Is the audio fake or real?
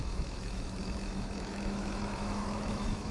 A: fake